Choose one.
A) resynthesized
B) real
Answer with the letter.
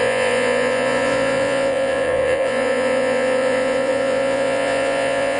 A